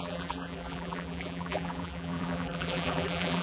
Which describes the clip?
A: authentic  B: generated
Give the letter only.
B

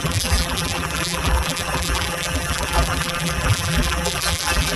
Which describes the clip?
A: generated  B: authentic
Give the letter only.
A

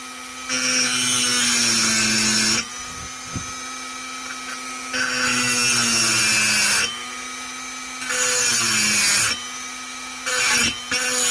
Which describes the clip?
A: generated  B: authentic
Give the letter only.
B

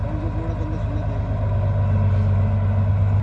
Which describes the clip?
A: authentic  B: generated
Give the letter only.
A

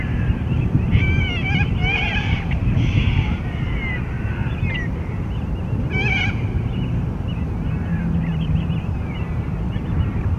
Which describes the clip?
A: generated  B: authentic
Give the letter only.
A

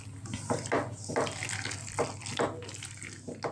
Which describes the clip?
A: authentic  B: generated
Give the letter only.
A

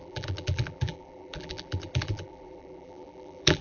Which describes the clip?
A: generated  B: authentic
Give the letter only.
A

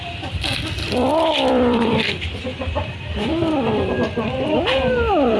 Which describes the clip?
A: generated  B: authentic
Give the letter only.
A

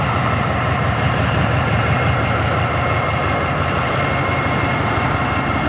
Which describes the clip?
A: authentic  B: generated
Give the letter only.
B